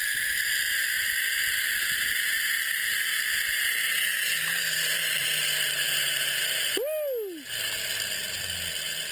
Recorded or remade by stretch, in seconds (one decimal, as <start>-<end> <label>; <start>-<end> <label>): 0.0-9.1 recorded